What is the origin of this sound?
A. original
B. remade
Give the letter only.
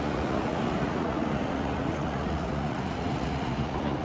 B